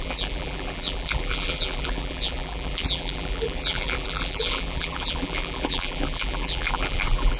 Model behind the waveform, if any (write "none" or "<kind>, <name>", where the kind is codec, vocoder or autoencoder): vocoder, BigVGAN v2